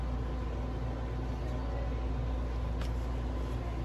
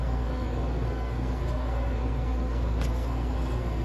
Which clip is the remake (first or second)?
second